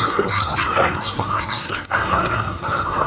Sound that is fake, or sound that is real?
fake